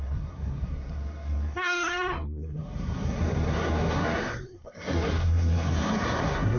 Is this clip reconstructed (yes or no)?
yes